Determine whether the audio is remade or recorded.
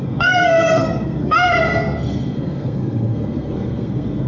remade